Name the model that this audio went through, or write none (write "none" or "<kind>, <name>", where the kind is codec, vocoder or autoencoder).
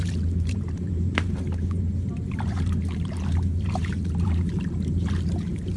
vocoder, BigVGAN v2